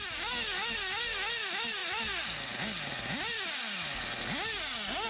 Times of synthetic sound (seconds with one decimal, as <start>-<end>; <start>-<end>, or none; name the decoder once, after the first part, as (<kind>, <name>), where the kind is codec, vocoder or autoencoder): none